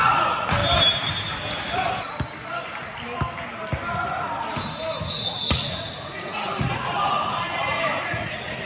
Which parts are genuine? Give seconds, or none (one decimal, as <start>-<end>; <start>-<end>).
0.6-5.1